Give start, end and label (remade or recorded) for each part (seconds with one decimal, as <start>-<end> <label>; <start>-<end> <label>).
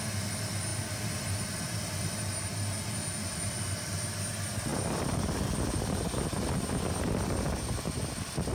0.0-8.5 recorded